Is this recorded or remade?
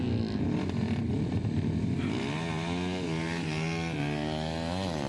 recorded